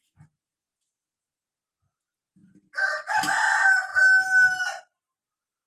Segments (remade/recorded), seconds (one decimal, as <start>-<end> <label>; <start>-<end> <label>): 0.0-5.7 recorded